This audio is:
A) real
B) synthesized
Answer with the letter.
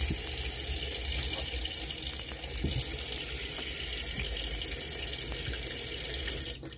A